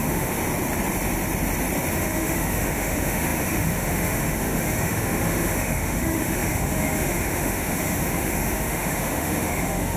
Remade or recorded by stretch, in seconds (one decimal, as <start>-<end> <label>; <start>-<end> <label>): 0.0-0.4 remade; 0.4-1.9 recorded; 1.9-10.0 remade

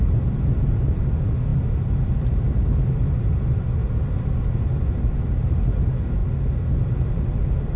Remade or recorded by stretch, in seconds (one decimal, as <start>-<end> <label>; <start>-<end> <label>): 0.0-3.8 remade; 3.8-5.0 recorded; 5.0-6.2 remade; 6.2-6.8 recorded; 6.8-7.8 remade

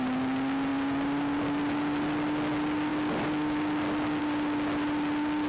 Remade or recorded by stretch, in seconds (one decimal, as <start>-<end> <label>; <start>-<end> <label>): 0.0-0.7 recorded; 0.7-1.4 remade; 1.4-5.5 recorded

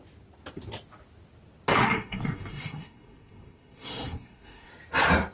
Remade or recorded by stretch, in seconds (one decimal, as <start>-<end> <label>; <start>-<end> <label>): 0.0-1.8 recorded; 1.8-4.7 remade; 4.7-5.3 recorded

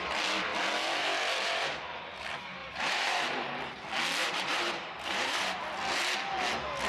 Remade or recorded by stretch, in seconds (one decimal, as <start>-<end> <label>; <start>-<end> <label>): 0.0-2.6 recorded; 2.6-3.7 remade; 3.7-4.2 recorded; 4.2-5.6 remade; 5.6-6.9 recorded

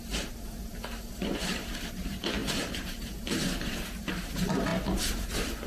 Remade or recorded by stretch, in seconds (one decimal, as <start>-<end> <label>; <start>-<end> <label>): 0.0-5.7 remade

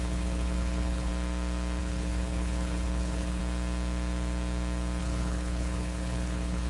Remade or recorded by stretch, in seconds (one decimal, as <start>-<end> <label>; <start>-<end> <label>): 0.0-1.1 remade; 1.1-1.8 recorded; 1.8-3.4 remade; 3.4-5.0 recorded; 5.0-6.7 remade

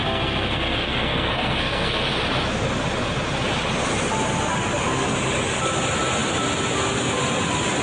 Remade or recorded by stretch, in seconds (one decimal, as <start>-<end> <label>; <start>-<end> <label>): 0.0-2.1 remade; 2.1-7.8 recorded